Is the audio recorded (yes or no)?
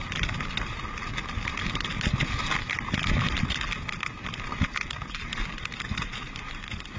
yes